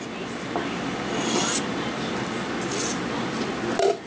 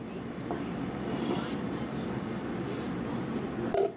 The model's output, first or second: second